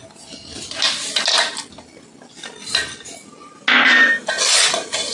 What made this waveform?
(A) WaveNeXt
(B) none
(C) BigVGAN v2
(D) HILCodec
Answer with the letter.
B